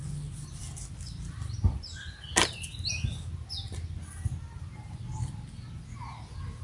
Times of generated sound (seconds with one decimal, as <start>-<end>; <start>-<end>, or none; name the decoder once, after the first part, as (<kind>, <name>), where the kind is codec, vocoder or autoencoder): none